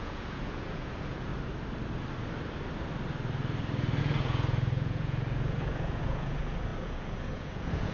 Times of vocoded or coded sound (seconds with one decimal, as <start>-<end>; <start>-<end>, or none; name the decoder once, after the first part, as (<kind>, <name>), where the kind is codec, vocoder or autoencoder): 0.0-1.3 (vocoder, Vocos); 4.0-7.9